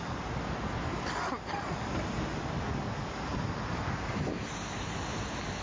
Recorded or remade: recorded